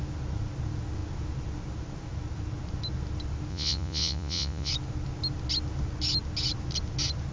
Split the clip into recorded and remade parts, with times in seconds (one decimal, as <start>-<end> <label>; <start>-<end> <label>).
0.0-3.5 recorded; 3.5-4.7 remade; 4.7-7.3 recorded